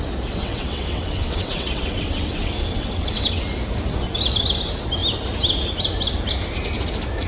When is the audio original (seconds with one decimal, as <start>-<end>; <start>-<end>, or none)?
0.0-0.4; 3.4-7.3